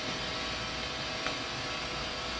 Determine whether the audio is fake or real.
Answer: real